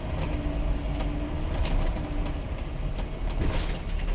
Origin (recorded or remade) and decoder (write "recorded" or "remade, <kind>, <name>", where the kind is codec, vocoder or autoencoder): recorded